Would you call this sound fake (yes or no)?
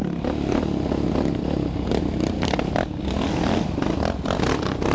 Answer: no